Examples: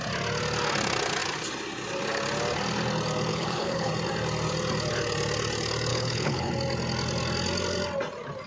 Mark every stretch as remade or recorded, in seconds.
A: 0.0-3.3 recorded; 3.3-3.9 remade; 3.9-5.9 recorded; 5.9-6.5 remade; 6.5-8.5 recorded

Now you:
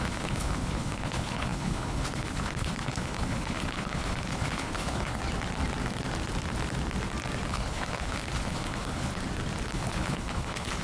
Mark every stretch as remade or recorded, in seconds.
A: 0.0-5.2 remade; 5.2-7.5 recorded; 7.5-9.1 remade; 9.1-9.7 recorded; 9.7-10.8 remade

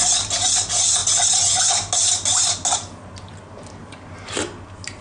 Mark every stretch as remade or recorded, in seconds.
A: 0.0-5.0 recorded

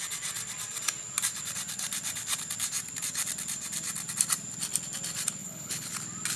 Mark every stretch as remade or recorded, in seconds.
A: 0.0-5.4 recorded; 5.4-5.9 remade; 5.9-6.4 recorded

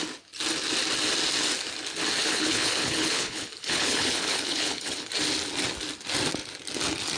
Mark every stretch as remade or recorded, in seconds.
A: 0.0-2.2 recorded; 2.2-5.1 remade; 5.1-7.2 recorded

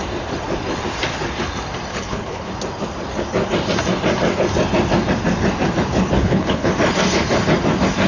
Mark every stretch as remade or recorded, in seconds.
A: 0.0-1.9 recorded; 1.9-2.5 remade; 2.5-6.2 recorded; 6.2-6.7 remade; 6.7-8.1 recorded

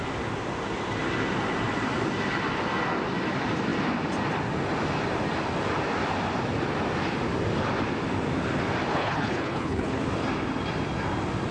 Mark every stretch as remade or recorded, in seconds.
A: 0.0-8.9 recorded; 8.9-10.0 remade; 10.0-11.5 recorded